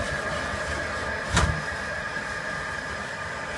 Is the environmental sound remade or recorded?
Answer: remade